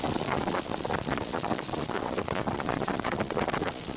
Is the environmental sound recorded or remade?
remade